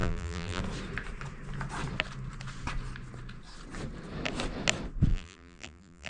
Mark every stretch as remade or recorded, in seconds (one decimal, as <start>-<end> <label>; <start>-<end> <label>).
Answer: 0.0-0.6 remade; 0.6-5.1 recorded; 5.1-6.1 remade